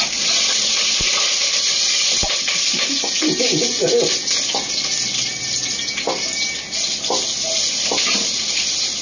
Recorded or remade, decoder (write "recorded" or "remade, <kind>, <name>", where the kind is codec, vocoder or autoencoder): recorded